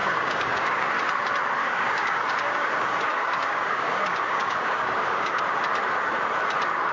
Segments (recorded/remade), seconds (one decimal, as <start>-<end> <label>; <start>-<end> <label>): 0.0-0.9 remade; 0.9-1.6 recorded; 1.6-5.4 remade; 5.4-6.9 recorded

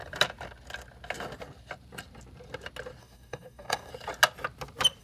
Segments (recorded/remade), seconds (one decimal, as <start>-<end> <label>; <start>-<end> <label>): 0.0-3.0 recorded; 3.0-3.9 remade; 3.9-5.0 recorded

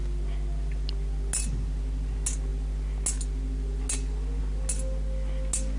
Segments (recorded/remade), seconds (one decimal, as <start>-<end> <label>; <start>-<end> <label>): 0.0-5.8 recorded

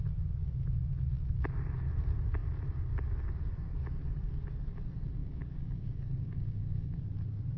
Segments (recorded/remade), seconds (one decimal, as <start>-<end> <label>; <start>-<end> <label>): 0.0-5.2 recorded; 5.2-7.0 remade; 7.0-7.6 recorded

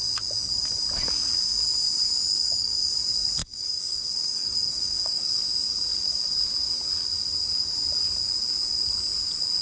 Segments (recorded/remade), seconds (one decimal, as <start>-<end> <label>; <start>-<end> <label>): 0.0-2.3 recorded; 2.3-2.9 remade; 2.9-3.4 recorded; 3.4-5.4 remade; 5.4-9.6 recorded

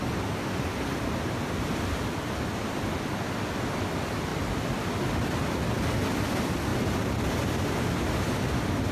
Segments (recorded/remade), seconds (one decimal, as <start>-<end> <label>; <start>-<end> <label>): 0.0-8.9 recorded

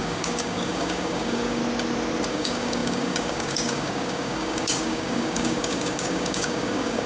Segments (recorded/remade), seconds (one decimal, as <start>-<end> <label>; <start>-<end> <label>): 0.0-1.6 remade; 1.6-2.3 recorded; 2.3-7.1 remade

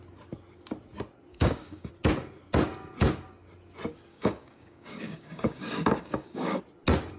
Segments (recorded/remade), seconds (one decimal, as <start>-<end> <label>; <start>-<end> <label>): 0.0-1.3 recorded; 1.3-1.9 remade; 1.9-4.1 recorded; 4.1-6.6 remade; 6.6-7.2 recorded